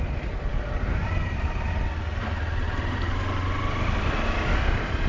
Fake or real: real